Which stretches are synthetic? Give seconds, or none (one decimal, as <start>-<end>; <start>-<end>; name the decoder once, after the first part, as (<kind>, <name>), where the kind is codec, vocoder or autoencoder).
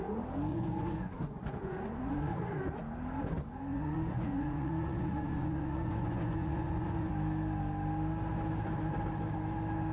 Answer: 0.5-2.6 (vocoder, Vocos); 3.7-7.1